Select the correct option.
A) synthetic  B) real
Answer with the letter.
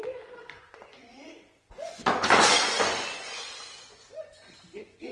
A